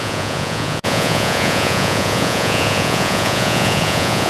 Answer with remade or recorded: remade